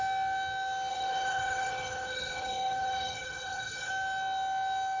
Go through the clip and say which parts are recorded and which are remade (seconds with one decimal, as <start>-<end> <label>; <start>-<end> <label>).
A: 0.0-0.9 recorded; 0.9-3.9 remade; 3.9-5.0 recorded